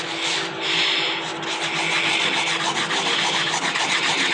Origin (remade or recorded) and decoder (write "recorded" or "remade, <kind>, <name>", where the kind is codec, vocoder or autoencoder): recorded